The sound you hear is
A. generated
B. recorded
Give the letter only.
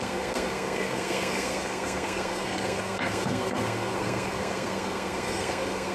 A